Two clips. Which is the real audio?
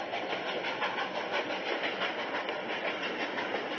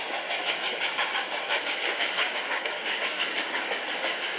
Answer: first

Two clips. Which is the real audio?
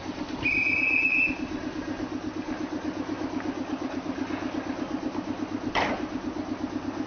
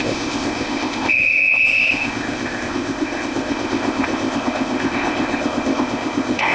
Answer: first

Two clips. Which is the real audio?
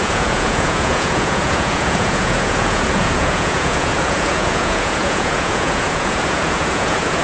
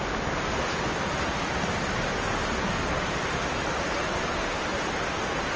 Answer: second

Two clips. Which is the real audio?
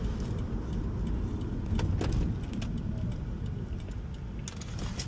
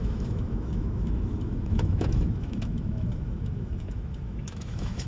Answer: first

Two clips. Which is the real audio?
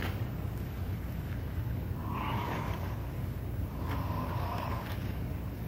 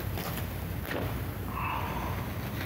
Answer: second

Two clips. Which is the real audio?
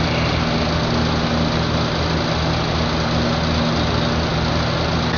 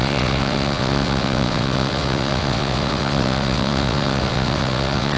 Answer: first